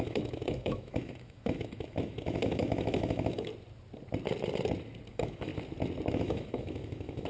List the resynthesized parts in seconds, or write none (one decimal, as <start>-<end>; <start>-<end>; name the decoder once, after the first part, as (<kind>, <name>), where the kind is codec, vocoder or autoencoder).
0.0-3.5 (autoencoder, DAC-VAE); 5.1-5.5; 6.1-7.3